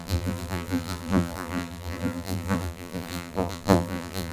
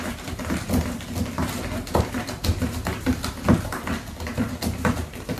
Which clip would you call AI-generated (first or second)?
first